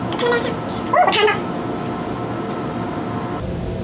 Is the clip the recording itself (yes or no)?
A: yes